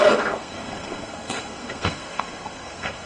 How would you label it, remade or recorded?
remade